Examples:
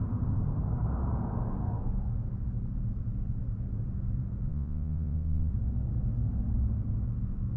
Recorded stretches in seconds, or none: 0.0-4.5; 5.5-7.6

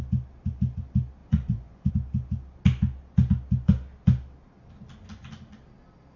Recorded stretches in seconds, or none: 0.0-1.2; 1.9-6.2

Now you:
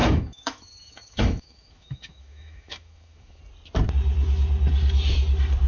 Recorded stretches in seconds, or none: 3.4-5.7

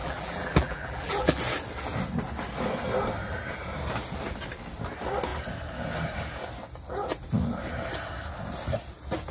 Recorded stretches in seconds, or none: 1.4-9.3

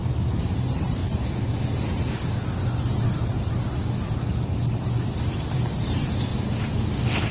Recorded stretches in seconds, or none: 0.0-0.5; 1.0-5.2; 6.3-7.3

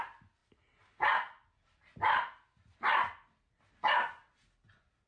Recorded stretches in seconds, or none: 0.0-5.1

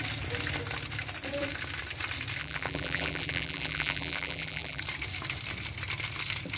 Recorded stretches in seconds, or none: 0.0-2.4; 4.8-6.6